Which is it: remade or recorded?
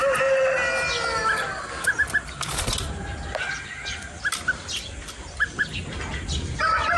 recorded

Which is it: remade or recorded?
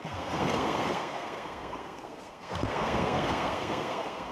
remade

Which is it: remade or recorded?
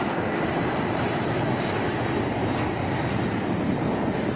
recorded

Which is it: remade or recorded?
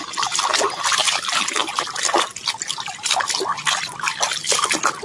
recorded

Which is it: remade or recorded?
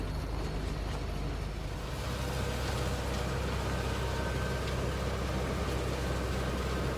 recorded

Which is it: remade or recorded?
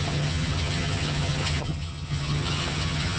remade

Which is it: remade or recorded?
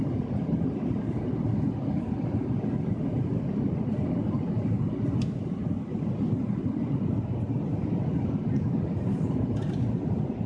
recorded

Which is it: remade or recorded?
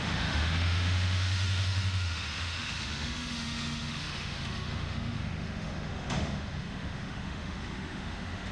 remade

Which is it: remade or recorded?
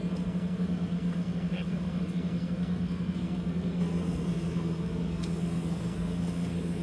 remade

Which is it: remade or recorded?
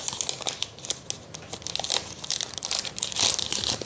recorded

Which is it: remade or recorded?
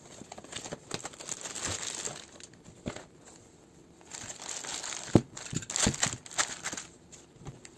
recorded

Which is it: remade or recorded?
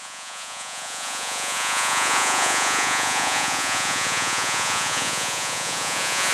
remade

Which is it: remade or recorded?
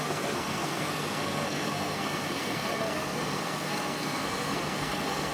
remade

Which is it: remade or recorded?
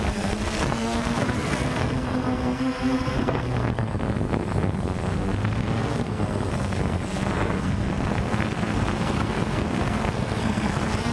remade